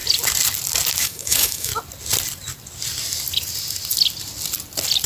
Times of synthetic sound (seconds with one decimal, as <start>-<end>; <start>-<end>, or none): 1.0-1.7